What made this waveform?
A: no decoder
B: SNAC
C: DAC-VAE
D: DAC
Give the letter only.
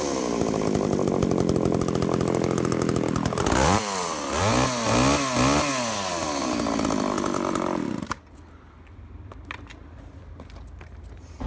A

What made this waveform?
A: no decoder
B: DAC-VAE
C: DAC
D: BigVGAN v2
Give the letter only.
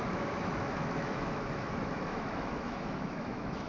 B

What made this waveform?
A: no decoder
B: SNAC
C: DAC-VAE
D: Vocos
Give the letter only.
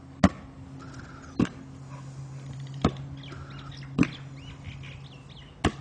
A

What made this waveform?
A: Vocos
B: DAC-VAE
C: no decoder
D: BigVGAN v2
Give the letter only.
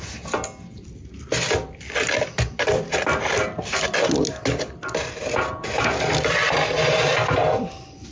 C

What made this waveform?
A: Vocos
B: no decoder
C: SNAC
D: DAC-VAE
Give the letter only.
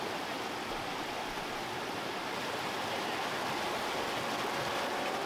B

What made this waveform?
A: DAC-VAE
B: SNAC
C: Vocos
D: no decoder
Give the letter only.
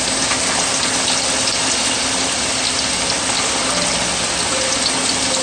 D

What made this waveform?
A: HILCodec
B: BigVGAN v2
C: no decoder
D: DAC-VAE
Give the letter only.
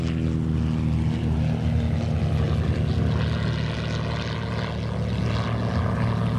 C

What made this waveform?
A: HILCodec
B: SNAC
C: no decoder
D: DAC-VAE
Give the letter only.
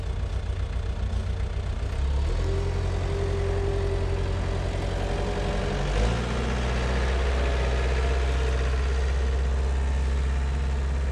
C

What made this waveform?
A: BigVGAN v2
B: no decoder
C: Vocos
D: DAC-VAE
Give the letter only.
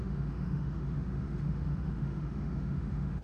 D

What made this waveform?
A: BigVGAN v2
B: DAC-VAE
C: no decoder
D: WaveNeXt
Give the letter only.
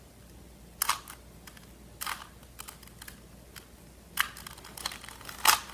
C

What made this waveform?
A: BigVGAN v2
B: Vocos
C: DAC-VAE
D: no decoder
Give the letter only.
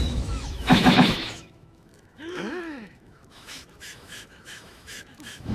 C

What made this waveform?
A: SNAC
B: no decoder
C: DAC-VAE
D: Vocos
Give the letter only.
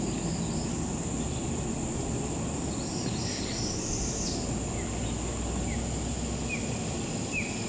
B